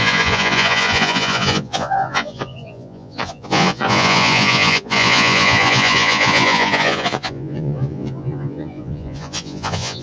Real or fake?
fake